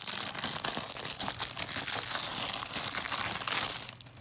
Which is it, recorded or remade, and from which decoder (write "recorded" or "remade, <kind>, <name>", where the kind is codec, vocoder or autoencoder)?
recorded